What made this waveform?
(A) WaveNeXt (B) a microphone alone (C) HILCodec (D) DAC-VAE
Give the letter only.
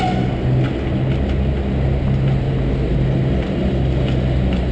B